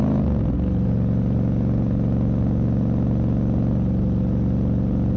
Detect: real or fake real